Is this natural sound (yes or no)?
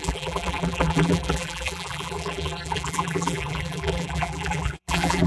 no